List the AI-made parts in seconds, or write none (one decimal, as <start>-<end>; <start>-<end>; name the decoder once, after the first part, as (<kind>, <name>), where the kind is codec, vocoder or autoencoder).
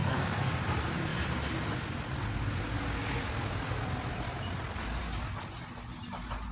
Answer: 0.0-0.5 (codec, SNAC)